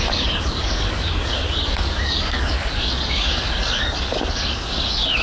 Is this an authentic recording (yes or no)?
no